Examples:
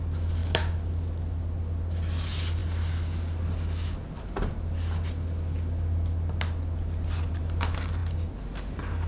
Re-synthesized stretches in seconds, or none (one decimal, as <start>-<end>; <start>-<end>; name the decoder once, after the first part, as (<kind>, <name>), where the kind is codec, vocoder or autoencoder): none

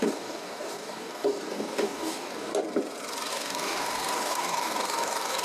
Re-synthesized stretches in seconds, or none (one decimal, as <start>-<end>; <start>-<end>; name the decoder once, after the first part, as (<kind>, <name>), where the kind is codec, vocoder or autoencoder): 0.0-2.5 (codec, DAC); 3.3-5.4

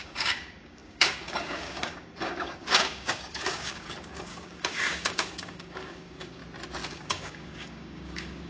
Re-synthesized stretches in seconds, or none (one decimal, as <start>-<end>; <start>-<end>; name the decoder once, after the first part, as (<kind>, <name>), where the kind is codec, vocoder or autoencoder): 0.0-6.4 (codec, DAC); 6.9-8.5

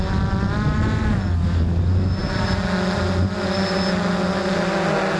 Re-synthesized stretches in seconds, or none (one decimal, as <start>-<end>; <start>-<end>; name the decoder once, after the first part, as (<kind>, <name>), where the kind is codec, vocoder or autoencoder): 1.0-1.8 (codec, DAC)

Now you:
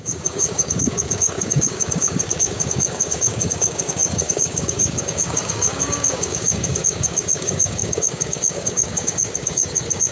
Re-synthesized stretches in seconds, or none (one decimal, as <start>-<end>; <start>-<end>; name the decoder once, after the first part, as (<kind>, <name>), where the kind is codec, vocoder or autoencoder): 0.0-10.1 (codec, DAC)

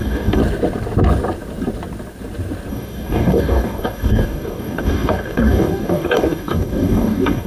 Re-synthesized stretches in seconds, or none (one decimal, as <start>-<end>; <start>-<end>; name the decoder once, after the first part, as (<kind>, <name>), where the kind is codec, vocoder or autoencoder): 0.0-0.4 (codec, DAC); 2.7-7.5